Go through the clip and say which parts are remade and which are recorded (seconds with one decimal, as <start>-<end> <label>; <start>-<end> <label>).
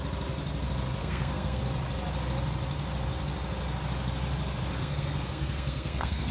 0.0-1.0 recorded; 1.0-1.6 remade; 1.6-4.8 recorded; 4.8-6.3 remade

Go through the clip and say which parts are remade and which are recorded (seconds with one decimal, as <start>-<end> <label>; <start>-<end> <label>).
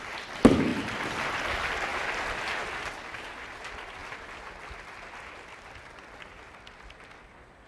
0.0-7.7 recorded